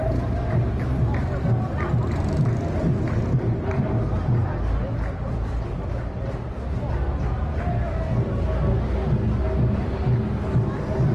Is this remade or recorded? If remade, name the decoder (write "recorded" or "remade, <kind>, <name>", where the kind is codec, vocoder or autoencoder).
recorded